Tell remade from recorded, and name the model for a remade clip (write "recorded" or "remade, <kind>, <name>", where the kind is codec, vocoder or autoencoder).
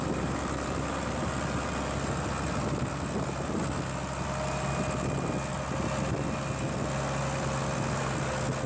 recorded